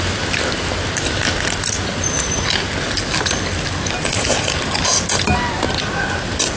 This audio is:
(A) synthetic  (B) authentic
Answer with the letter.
B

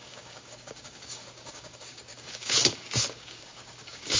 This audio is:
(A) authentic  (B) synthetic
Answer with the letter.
B